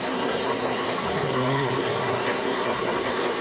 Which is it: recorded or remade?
remade